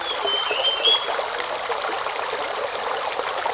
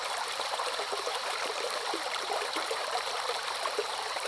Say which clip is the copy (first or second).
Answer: second